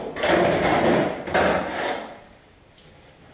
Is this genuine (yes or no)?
yes